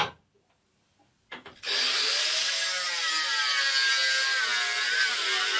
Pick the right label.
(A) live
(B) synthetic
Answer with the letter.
A